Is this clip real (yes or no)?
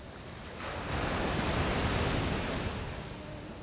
yes